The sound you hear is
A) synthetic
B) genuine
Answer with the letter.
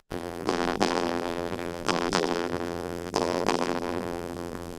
A